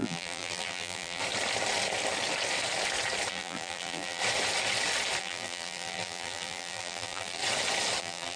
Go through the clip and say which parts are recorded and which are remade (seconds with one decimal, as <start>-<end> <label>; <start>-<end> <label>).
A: 0.0-1.2 remade; 1.2-3.3 recorded; 3.3-4.2 remade; 4.2-5.2 recorded; 5.2-7.4 remade; 7.4-8.0 recorded; 8.0-8.4 remade